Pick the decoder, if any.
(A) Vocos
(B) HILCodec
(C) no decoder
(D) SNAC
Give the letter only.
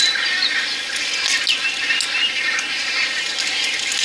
C